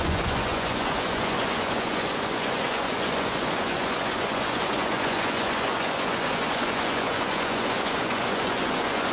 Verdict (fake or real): fake